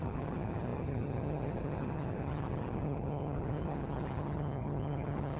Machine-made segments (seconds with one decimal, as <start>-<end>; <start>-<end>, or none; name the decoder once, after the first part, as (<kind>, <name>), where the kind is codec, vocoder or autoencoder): 0.0-5.4 (vocoder, HiFi-GAN)